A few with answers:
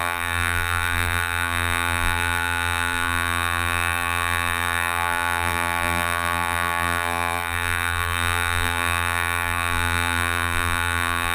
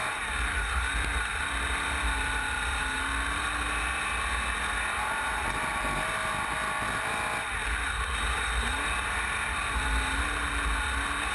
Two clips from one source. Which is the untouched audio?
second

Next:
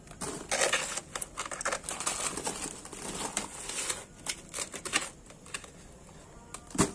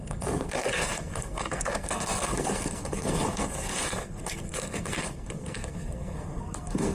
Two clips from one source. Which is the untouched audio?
first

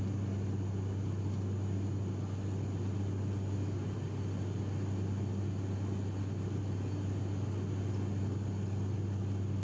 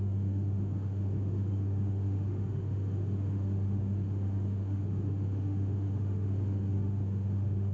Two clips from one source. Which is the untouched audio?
first